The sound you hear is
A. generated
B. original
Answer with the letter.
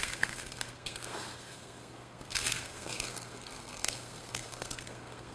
A